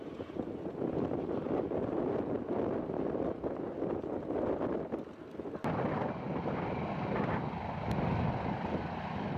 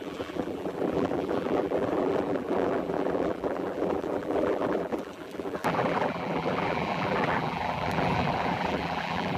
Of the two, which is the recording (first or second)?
first